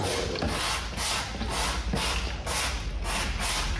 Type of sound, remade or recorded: recorded